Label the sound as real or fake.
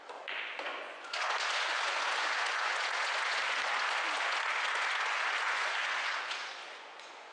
fake